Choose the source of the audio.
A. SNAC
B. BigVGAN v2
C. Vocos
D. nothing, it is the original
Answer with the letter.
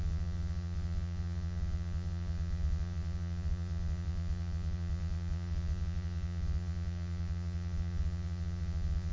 C